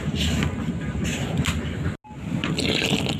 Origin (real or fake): real